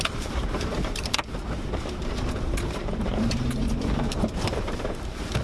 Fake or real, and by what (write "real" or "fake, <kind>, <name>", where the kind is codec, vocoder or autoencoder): fake, vocoder, BigVGAN v2